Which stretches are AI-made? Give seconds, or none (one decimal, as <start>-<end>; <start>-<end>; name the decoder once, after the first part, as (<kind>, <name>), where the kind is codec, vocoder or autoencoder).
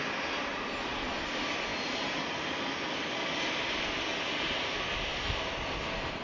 none